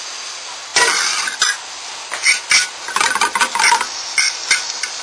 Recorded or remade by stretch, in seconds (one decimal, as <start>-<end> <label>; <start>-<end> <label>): 0.0-5.0 recorded